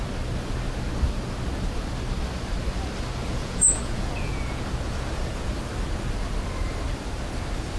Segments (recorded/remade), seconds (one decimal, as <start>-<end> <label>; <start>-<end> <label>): 0.0-3.2 recorded; 3.2-5.5 remade; 5.5-7.8 recorded